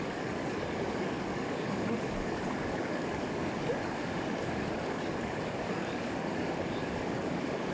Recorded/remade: remade